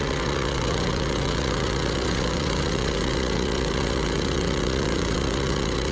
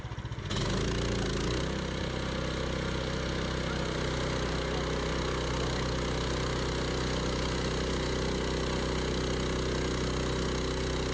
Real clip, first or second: second